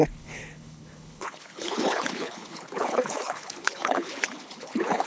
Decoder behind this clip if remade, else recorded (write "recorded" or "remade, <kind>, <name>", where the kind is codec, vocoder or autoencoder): remade, codec, HILCodec